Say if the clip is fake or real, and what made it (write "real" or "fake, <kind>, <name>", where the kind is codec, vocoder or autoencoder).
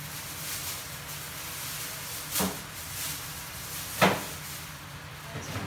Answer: real